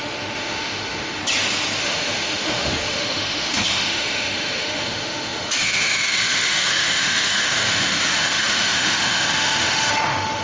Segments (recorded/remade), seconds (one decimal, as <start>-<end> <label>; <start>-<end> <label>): 0.0-1.2 remade; 1.2-1.8 recorded; 1.8-10.4 remade